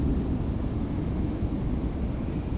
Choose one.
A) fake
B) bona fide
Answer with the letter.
B